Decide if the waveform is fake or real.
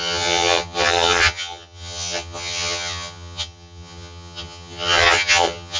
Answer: fake